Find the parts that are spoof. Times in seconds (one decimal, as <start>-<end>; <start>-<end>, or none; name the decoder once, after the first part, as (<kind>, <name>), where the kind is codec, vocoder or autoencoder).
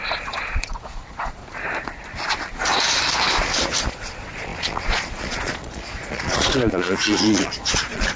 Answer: 0.0-1.4 (vocoder, Vocos); 3.9-8.2